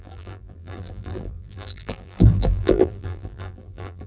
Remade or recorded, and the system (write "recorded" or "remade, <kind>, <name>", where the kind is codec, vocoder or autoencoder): remade, vocoder, BigVGAN v2